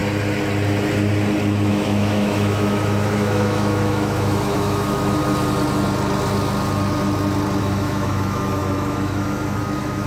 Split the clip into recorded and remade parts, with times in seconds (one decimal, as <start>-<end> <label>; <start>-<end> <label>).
0.0-1.7 recorded; 1.7-5.2 remade; 5.2-7.6 recorded; 7.6-10.1 remade